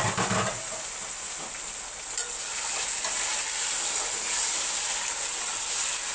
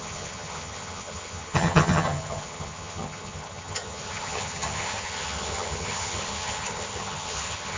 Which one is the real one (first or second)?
first